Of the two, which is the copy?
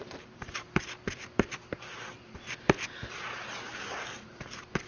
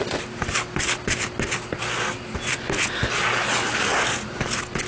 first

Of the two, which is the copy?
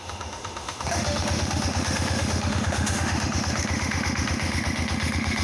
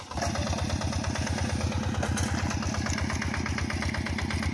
first